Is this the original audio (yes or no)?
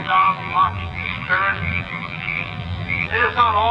no